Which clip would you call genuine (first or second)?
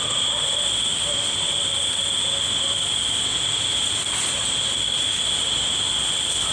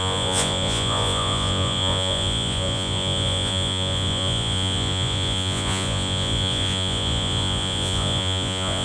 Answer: first